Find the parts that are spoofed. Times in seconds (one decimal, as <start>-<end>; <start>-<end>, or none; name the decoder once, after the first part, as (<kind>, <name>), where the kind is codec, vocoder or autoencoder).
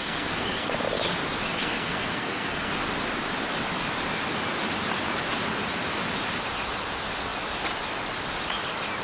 0.0-0.7 (codec, SNAC); 1.6-2.7